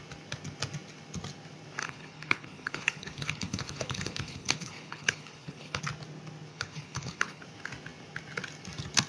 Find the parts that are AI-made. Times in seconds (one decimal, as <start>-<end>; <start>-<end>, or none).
1.8-5.8; 6.5-7.4